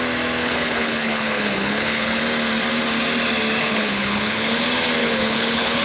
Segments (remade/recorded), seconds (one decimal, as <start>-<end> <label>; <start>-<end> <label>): 0.0-0.4 recorded; 0.4-2.2 remade; 2.2-3.6 recorded; 3.6-4.6 remade; 4.6-5.0 recorded; 5.0-5.8 remade